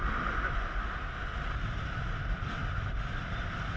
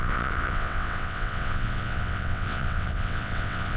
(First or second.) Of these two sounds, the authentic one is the first